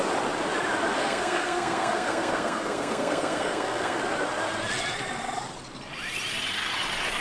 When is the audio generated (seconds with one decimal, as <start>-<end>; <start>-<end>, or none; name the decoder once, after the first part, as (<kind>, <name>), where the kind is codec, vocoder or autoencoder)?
1.0-4.0 (codec, SNAC)